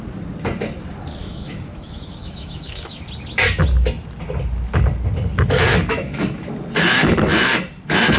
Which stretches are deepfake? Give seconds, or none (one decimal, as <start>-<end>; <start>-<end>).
1.2-3.0; 5.9-6.5